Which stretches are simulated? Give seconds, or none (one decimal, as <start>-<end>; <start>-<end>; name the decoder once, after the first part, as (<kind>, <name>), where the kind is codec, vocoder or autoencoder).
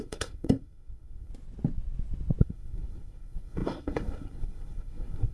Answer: 0.0-1.3 (codec, SNAC); 2.4-5.3